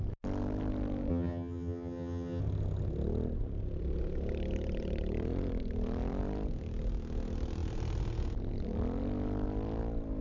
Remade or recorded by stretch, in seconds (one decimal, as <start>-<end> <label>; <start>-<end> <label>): 0.0-1.1 recorded; 1.1-2.4 remade; 2.4-10.2 recorded